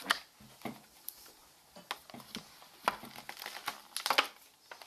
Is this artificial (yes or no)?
no